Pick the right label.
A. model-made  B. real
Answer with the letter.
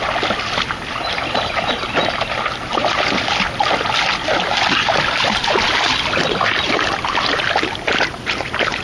B